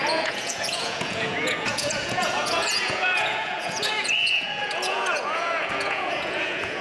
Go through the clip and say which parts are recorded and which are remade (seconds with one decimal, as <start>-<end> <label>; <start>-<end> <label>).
0.0-6.8 remade